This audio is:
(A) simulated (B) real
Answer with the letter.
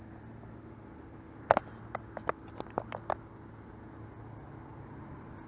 B